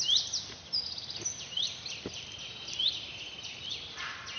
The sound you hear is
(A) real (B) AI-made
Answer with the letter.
A